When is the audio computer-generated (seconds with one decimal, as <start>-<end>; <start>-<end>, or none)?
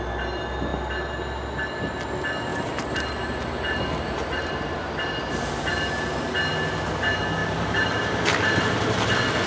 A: 2.5-4.9; 7.4-9.1